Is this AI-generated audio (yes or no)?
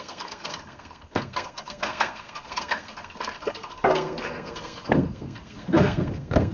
yes